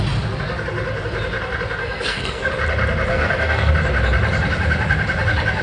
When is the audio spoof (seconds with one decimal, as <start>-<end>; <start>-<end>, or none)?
1.8-2.5; 3.1-3.7